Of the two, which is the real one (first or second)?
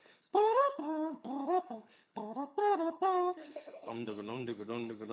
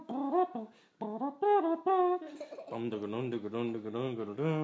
second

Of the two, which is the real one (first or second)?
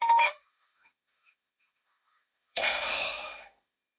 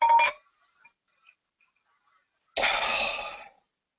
second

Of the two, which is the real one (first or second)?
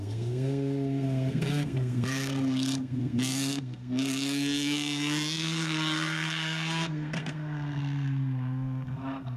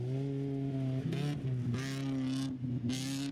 second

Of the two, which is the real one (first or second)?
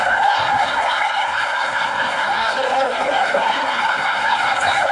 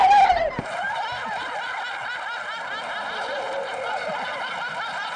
second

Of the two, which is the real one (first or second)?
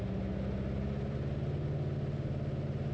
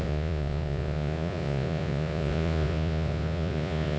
first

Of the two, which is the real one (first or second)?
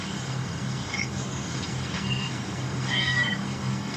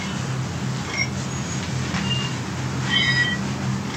second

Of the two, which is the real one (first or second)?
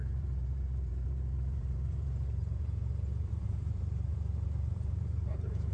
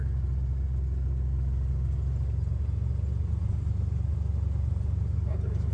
second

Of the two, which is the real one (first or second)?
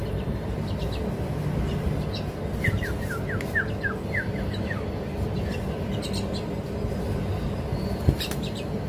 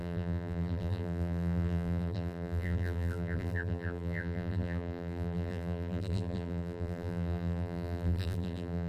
first